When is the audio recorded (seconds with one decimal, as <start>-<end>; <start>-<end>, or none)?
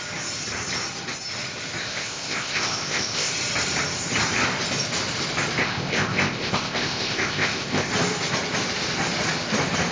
0.0-1.8; 3.3-5.6; 7.9-9.9